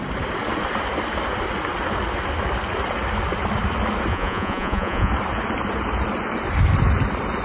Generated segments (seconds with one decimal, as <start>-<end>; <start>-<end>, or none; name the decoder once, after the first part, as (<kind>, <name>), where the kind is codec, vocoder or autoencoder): 4.1-5.1 (vocoder, Vocos)